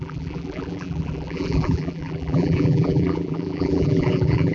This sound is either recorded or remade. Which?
remade